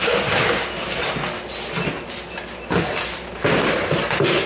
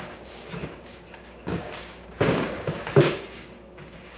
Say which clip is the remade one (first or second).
second